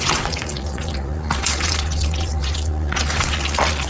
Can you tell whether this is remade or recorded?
remade